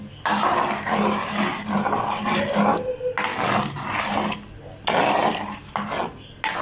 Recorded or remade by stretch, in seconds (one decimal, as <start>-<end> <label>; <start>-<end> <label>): 0.0-6.6 recorded